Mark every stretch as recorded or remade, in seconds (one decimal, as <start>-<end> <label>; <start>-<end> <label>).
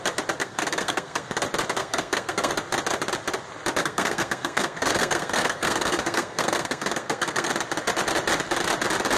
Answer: 0.0-0.4 recorded; 0.4-1.3 remade; 1.3-1.8 recorded; 1.8-2.5 remade; 2.5-3.8 recorded; 3.8-7.5 remade; 7.5-9.2 recorded